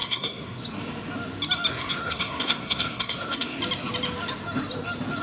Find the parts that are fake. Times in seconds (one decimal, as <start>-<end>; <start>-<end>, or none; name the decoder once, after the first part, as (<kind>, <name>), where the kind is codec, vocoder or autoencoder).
0.0-0.6 (codec, SNAC); 1.7-3.6